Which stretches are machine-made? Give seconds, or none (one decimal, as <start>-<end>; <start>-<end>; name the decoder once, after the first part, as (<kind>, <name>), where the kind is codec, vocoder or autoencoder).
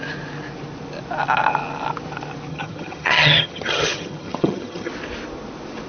2.5-4.9 (vocoder, HiFi-GAN)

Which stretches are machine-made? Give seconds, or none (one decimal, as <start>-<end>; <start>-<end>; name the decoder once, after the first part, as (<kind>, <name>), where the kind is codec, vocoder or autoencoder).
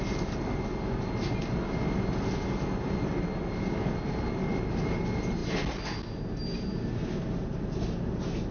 none